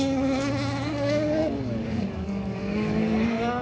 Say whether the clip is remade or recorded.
remade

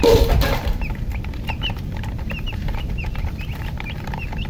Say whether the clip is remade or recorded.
remade